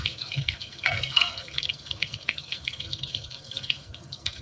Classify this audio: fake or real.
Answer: fake